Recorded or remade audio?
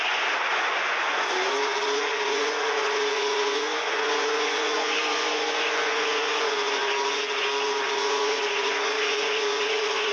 remade